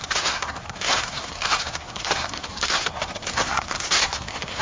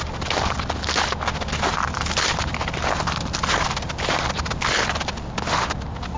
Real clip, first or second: second